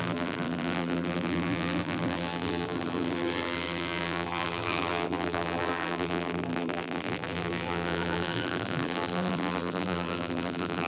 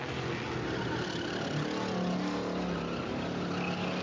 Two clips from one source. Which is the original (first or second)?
second